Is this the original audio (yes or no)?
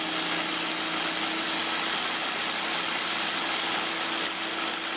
yes